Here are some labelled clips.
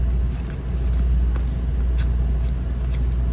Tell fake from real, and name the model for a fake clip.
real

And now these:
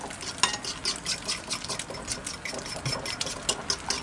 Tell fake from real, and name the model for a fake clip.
real